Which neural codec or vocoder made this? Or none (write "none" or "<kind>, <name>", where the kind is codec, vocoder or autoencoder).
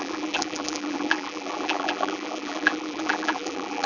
vocoder, BigVGAN v2